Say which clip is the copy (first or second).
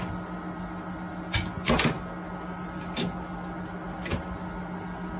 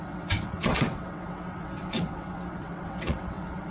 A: second